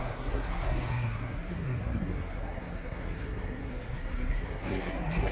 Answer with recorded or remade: remade